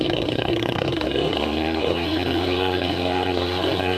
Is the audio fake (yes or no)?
yes